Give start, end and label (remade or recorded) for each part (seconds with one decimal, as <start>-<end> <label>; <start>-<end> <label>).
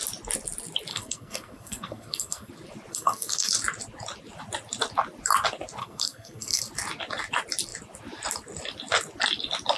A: 0.0-0.9 recorded; 0.9-2.5 remade; 2.5-2.9 recorded; 2.9-3.5 remade; 3.5-5.8 recorded; 5.8-6.6 remade; 6.6-9.8 recorded